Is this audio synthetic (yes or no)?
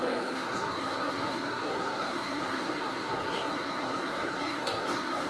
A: yes